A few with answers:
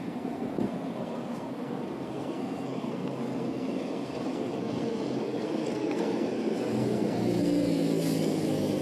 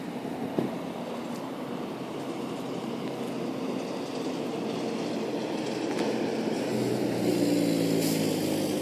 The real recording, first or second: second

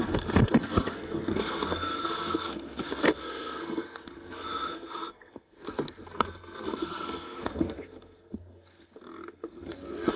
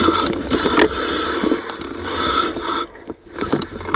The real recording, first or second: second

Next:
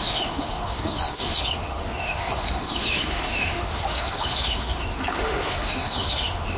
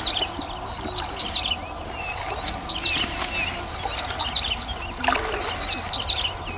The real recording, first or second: second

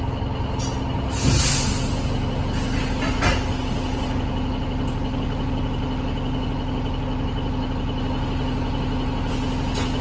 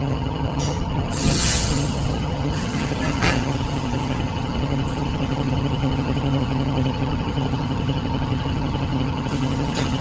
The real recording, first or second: first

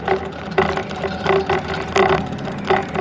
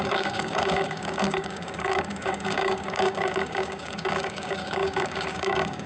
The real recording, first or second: first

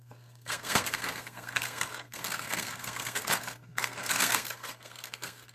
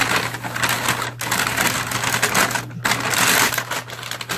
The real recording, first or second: second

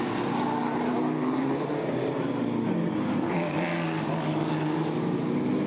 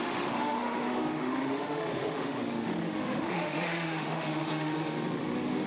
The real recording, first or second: first